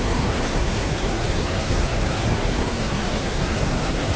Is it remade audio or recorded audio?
remade